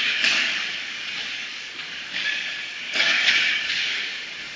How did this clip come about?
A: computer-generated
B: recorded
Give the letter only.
A